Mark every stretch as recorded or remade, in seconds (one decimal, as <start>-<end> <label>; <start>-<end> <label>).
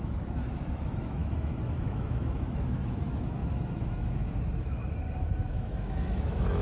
0.0-4.8 remade; 4.8-5.5 recorded; 5.5-6.6 remade